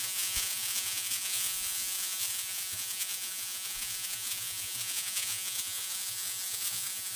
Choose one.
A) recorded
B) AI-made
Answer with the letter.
B